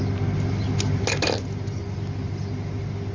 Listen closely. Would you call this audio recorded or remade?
recorded